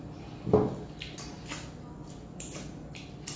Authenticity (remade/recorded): recorded